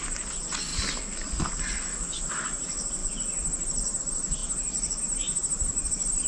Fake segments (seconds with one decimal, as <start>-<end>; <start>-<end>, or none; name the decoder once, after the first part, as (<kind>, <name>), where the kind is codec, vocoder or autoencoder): none